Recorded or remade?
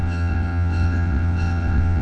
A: remade